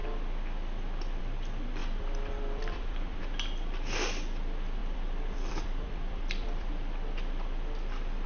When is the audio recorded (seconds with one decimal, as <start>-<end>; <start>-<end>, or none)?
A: 0.0-1.8; 3.2-4.8; 6.7-8.3